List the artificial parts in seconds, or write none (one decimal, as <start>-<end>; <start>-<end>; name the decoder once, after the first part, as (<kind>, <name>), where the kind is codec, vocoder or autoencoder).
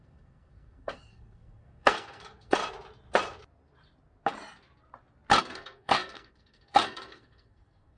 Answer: 0.0-2.6 (codec, SNAC); 5.4-8.0